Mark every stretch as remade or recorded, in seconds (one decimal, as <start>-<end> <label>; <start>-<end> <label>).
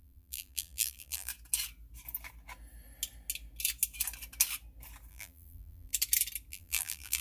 0.0-1.3 remade; 1.3-5.1 recorded; 5.1-5.9 remade; 5.9-6.5 recorded; 6.5-7.2 remade